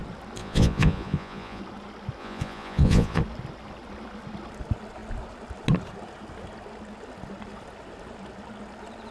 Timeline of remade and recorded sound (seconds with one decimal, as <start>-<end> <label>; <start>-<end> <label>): 0.0-0.4 recorded; 0.4-1.6 remade; 1.6-2.2 recorded; 2.2-3.2 remade; 3.2-9.1 recorded